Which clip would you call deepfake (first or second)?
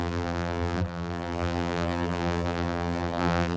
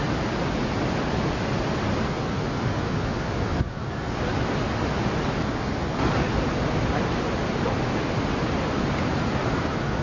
first